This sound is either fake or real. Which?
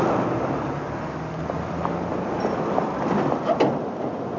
real